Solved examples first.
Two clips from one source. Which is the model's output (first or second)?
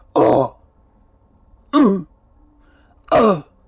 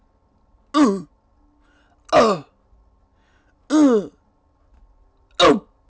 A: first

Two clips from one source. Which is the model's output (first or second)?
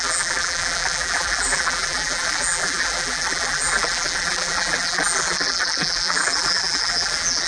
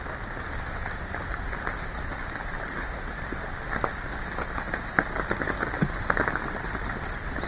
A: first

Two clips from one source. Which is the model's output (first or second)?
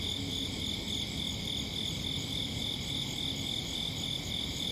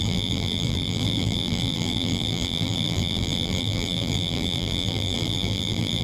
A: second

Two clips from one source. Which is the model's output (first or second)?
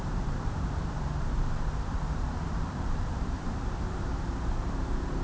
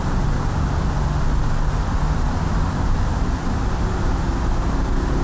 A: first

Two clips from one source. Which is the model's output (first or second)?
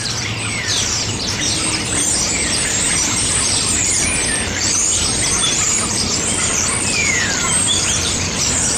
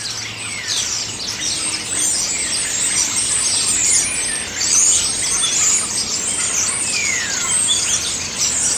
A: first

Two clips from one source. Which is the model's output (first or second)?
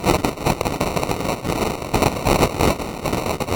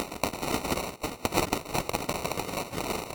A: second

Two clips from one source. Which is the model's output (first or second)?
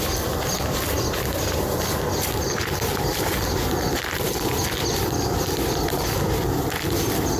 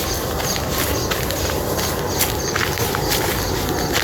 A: first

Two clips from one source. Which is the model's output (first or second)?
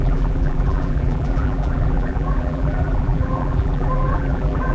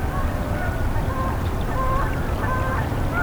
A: first